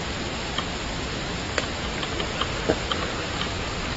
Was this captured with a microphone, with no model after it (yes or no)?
yes